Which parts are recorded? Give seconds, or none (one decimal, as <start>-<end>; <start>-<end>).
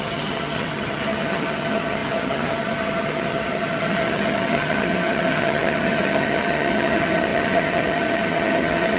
none